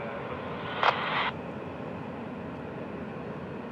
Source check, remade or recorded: recorded